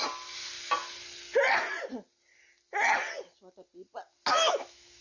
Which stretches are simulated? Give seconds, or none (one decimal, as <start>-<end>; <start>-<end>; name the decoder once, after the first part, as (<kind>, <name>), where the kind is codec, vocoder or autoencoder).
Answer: 4.3-5.0 (autoencoder, DAC-VAE)